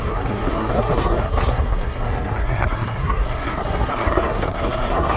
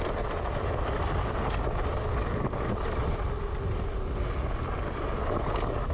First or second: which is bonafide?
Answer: second